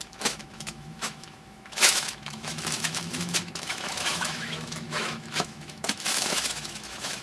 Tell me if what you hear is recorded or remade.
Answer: remade